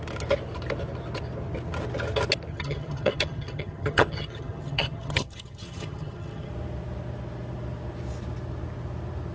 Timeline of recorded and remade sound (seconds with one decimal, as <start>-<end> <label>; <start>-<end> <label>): 0.0-2.5 recorded; 2.5-6.5 remade; 6.5-9.3 recorded